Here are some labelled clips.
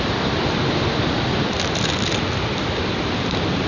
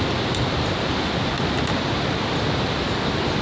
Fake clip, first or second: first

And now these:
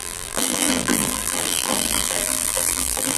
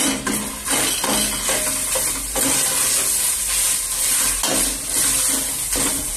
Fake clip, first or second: first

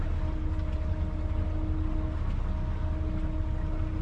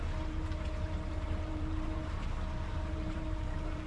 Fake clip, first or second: second